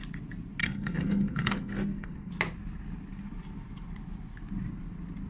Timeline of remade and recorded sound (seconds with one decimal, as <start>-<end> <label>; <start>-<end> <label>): 0.0-0.6 recorded; 0.6-2.3 remade; 2.3-5.3 recorded